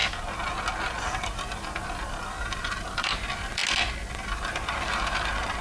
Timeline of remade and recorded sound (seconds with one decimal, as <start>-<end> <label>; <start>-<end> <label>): 0.0-1.0 recorded; 1.0-3.6 remade; 3.6-4.1 recorded; 4.1-5.6 remade